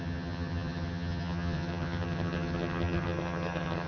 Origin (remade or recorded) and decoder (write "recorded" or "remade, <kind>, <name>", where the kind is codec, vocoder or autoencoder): remade, vocoder, HiFi-GAN